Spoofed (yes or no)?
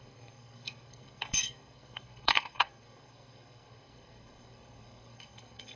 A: yes